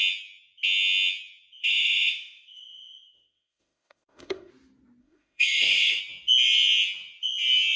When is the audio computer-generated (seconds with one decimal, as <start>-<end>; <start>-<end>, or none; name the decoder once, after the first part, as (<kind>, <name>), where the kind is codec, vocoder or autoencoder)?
1.6-4.5 (autoencoder, DAC-VAE); 5.0-6.0